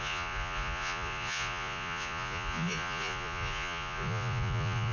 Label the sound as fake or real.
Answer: fake